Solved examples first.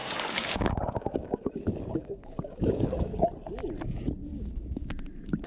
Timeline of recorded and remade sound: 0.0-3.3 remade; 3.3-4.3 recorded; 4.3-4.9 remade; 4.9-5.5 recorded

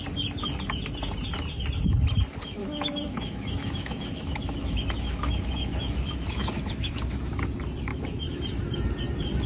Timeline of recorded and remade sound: 0.0-2.6 recorded; 2.6-7.3 remade; 7.3-7.9 recorded; 7.9-8.4 remade; 8.4-9.5 recorded

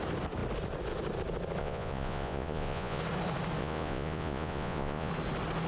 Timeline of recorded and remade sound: 0.0-1.6 recorded; 1.6-3.0 remade; 3.0-3.6 recorded; 3.6-5.1 remade; 5.1-5.7 recorded

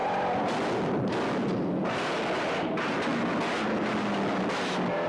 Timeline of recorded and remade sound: 0.0-5.1 recorded

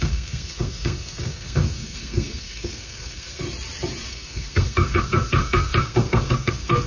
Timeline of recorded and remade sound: 0.0-3.4 remade; 3.4-4.1 recorded; 4.1-6.9 remade

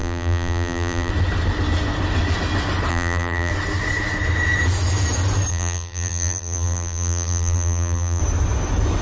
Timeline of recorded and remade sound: 0.0-1.1 remade; 1.1-2.9 recorded; 2.9-3.5 remade; 3.5-5.5 recorded; 5.5-8.2 remade; 8.2-9.0 recorded